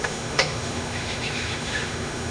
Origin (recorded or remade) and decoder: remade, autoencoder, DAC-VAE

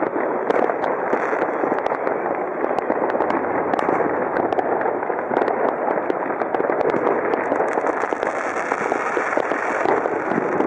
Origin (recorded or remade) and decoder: recorded